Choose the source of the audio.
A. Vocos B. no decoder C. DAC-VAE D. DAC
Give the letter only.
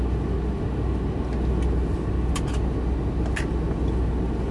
B